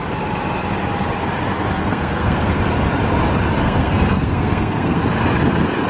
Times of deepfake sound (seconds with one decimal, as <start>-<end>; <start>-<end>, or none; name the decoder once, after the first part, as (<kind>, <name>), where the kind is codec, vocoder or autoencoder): 1.8-2.6 (codec, SNAC); 3.6-5.0